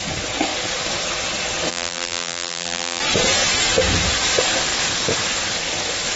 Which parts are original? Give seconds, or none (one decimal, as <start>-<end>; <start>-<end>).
0.0-1.7; 3.0-6.2